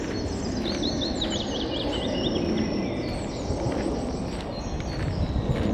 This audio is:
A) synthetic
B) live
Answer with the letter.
B